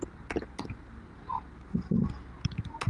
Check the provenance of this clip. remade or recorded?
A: recorded